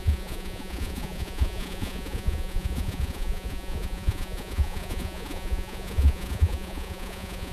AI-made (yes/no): yes